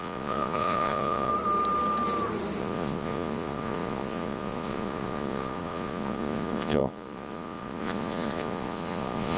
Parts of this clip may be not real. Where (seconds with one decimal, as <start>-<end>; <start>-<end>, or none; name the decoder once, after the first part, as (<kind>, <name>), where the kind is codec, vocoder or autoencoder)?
0.0-1.3 (vocoder, Vocos); 2.6-9.4